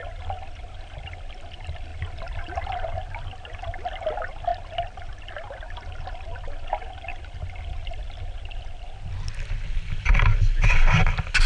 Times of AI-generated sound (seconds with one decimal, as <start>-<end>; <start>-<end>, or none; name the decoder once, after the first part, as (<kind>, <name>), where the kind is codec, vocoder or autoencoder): 1.9-2.7 (vocoder, BigVGAN v2)